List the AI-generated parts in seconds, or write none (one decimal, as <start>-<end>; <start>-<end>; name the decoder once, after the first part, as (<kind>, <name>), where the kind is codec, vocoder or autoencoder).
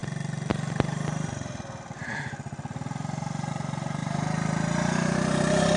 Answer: 4.0-5.8 (vocoder, BigVGAN v2)